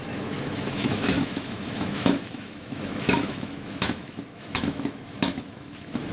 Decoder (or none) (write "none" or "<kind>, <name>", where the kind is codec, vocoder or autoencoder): autoencoder, DAC-VAE